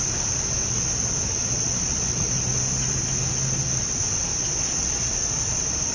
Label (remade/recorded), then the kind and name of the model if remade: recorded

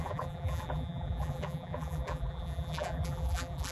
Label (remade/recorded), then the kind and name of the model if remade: remade, vocoder, BigVGAN v2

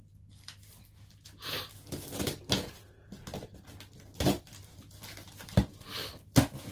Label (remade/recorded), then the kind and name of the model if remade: recorded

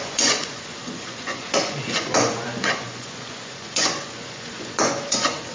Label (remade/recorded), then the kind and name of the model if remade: remade, vocoder, Vocos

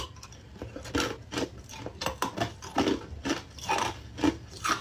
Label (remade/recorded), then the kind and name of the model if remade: recorded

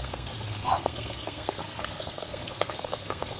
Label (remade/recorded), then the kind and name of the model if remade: remade, codec, SNAC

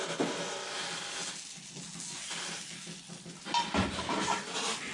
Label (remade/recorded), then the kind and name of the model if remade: recorded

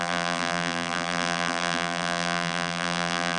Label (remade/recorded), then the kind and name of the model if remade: remade, vocoder, BigVGAN v2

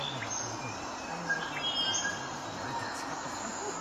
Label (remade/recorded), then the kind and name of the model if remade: recorded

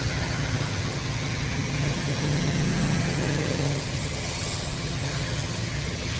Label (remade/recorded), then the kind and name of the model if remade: remade, vocoder, HiFi-GAN